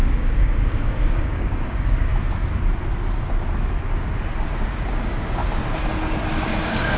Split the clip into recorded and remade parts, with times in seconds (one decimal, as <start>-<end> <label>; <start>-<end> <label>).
0.0-2.1 remade; 2.1-5.0 recorded; 5.0-5.4 remade; 5.4-6.6 recorded; 6.6-7.0 remade